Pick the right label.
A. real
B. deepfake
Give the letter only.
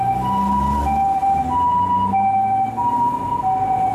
A